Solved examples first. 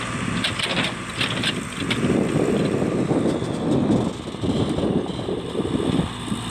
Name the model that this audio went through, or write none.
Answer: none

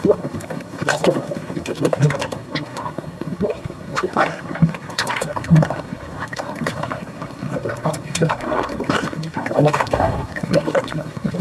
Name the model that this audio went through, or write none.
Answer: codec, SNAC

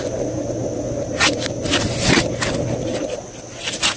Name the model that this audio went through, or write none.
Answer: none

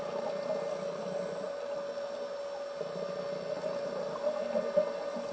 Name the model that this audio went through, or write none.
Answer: none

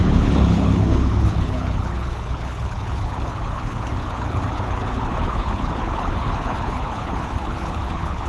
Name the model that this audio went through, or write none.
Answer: codec, HILCodec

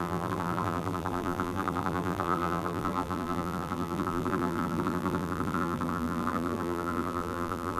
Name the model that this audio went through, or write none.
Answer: vocoder, BigVGAN v2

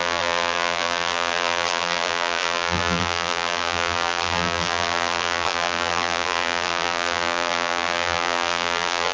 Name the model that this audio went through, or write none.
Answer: vocoder, BigVGAN v2